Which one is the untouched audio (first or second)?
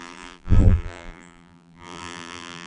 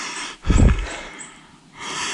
second